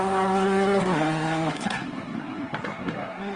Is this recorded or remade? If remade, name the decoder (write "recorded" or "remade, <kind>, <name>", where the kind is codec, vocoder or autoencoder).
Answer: remade, codec, SNAC